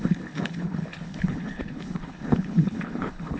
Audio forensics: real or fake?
fake